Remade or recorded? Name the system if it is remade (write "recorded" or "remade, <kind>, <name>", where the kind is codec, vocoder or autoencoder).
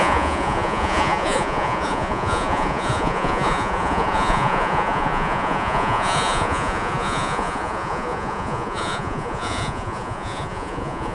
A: remade, vocoder, Vocos